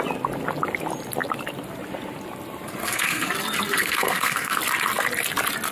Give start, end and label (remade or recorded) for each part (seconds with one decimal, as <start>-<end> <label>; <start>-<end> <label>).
0.0-2.8 recorded; 2.8-3.3 remade; 3.3-3.8 recorded; 3.8-4.6 remade; 4.6-5.7 recorded